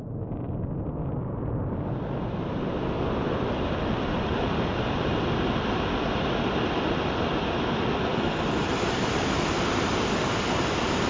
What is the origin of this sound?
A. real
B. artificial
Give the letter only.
A